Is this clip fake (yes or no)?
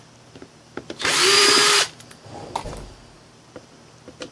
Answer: yes